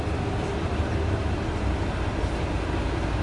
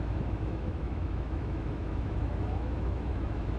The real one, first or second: first